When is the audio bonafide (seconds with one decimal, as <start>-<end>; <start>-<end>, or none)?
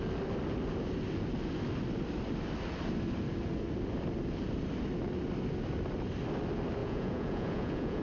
0.0-6.8